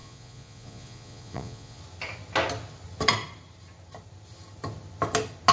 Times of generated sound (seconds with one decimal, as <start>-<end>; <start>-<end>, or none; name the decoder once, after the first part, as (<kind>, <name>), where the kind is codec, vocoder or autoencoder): 0.0-1.8 (vocoder, Vocos)